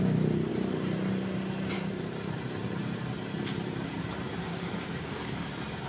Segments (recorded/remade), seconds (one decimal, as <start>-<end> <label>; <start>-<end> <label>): 0.0-4.5 recorded; 4.5-5.5 remade; 5.5-5.9 recorded